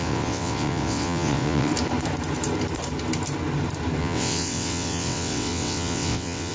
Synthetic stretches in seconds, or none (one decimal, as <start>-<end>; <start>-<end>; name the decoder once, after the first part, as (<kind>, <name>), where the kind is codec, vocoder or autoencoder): 0.0-1.7 (vocoder, WaveNeXt); 4.0-6.5